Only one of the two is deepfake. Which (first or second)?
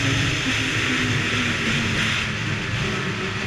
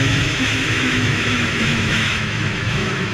second